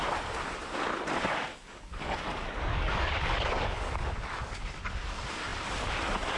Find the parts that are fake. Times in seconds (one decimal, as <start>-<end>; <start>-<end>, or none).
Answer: 1.5-4.6